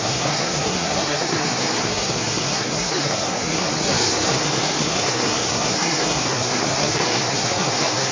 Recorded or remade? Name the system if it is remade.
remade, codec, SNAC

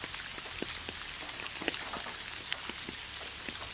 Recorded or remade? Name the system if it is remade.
recorded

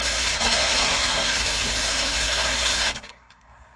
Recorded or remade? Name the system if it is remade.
remade, codec, SNAC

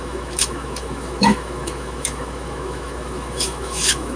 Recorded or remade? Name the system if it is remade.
remade, autoencoder, DAC-VAE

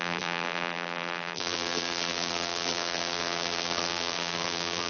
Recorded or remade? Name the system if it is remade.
remade, vocoder, BigVGAN v2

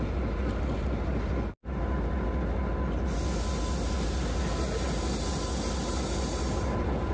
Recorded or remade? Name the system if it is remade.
recorded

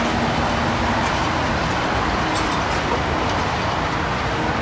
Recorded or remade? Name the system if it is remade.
recorded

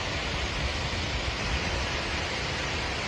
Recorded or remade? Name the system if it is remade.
recorded